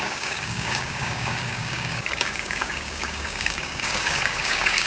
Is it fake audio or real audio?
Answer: fake